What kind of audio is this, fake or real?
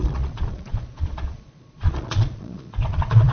fake